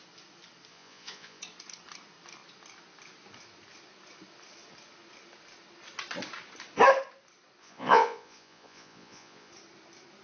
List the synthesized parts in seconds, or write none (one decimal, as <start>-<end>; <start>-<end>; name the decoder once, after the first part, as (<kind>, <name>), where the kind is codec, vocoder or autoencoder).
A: 0.7-1.4 (vocoder, Vocos); 7.6-9.5